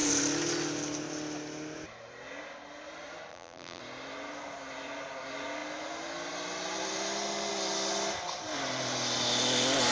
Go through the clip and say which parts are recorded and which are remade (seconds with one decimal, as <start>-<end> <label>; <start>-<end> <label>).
0.0-3.3 recorded; 3.3-3.8 remade; 3.8-9.9 recorded